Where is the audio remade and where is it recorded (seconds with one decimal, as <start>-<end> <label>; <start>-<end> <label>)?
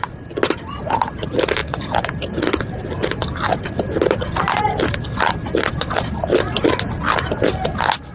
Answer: 0.0-8.1 recorded